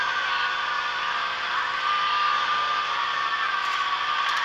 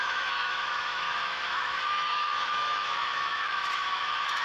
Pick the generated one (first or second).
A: second